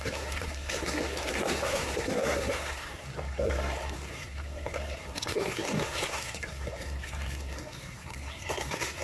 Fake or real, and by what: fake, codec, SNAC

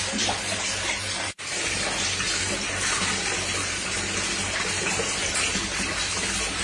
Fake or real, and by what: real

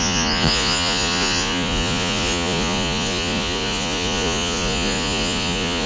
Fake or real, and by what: fake, vocoder, Vocos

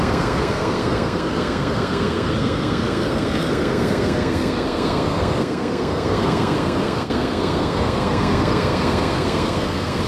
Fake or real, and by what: fake, codec, SNAC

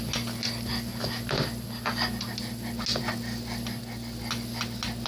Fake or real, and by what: real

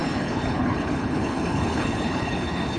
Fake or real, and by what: fake, codec, HILCodec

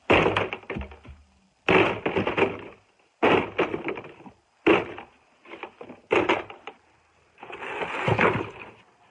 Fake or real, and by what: real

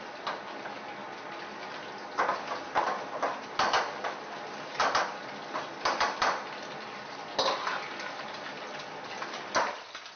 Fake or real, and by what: real